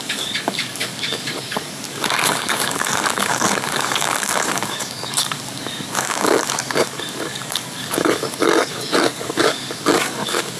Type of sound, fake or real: fake